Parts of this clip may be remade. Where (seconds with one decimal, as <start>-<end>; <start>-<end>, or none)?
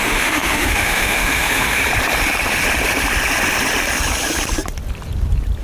0.0-1.8